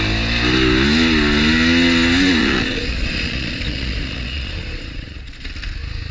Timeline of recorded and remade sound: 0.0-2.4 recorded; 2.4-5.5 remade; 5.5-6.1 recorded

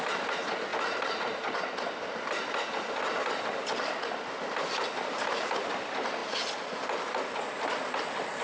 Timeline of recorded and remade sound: 0.0-8.4 recorded